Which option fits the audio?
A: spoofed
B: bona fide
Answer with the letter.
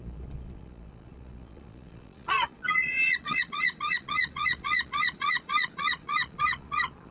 A